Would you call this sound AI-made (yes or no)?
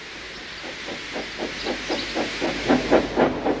no